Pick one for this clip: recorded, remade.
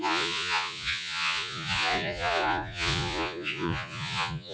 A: remade